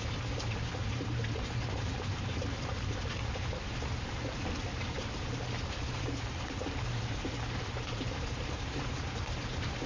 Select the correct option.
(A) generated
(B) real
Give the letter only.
A